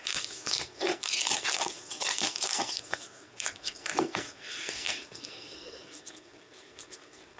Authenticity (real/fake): fake